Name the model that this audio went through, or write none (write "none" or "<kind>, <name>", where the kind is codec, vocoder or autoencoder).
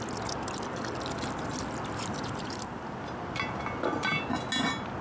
none